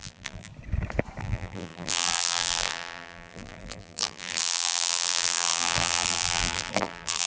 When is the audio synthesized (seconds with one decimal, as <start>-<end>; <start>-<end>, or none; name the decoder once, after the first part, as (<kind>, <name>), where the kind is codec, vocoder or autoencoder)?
0.0-0.5 (vocoder, BigVGAN v2); 1.2-7.3